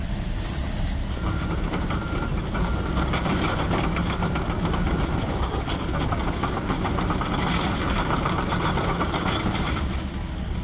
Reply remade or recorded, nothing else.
recorded